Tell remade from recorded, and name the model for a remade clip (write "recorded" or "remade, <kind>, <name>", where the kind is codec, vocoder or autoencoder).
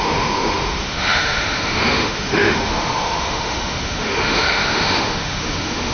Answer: remade, autoencoder, DAC-VAE